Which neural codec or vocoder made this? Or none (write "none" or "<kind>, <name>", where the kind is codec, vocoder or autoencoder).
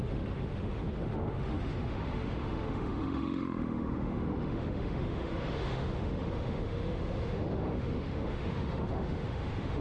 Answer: autoencoder, DAC-VAE